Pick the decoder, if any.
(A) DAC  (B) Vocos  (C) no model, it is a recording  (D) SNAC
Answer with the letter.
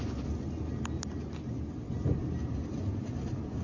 C